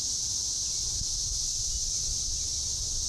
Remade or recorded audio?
recorded